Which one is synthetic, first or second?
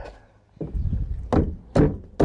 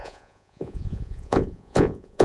second